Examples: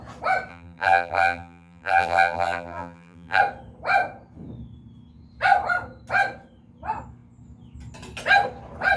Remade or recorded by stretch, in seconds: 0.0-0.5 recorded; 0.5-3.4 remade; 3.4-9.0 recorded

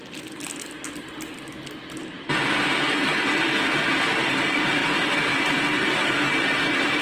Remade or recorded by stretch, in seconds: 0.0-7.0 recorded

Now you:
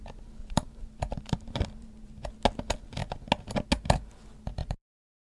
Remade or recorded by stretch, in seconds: 0.0-0.4 recorded; 0.4-2.3 remade; 2.3-4.6 recorded; 4.6-5.3 remade